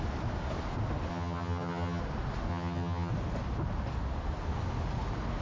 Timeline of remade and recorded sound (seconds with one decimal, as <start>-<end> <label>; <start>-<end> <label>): 0.0-1.1 recorded; 1.1-2.0 remade; 2.0-2.5 recorded; 2.5-3.1 remade; 3.1-5.4 recorded